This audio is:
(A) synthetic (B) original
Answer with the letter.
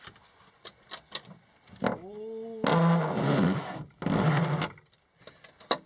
B